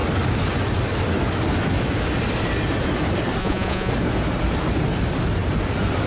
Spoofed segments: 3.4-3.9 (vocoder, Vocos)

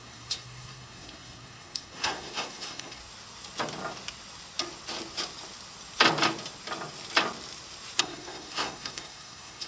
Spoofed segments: 0.0-3.0 (codec, SNAC); 8.0-9.7

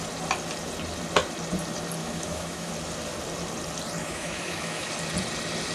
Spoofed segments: 2.0-2.7 (autoencoder, DAC-VAE); 4.0-4.9

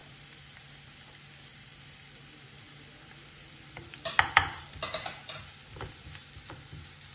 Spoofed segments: none

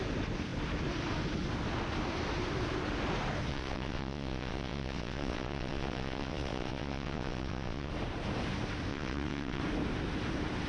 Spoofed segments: 3.5-7.9 (vocoder, WaveNeXt); 8.9-9.6